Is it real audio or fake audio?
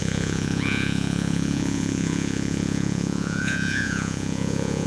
fake